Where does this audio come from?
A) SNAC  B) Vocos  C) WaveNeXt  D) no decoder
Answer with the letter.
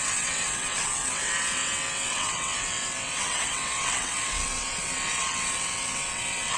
C